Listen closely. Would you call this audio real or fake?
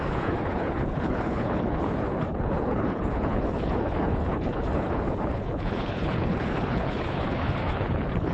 fake